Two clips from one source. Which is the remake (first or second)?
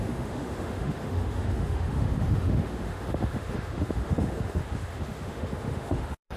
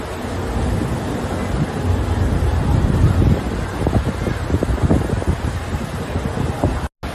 first